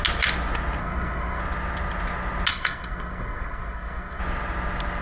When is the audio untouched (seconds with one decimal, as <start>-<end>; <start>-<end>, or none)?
0.0-0.8; 1.4-2.5; 4.2-5.0